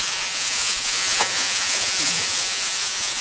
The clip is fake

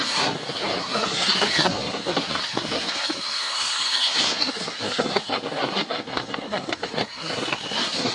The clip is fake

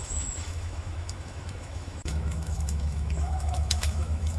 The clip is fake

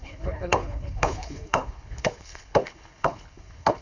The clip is fake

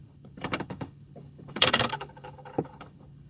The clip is fake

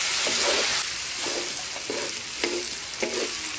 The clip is real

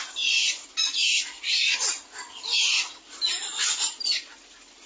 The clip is real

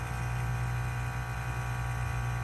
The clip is real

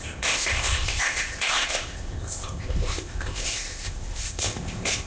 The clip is fake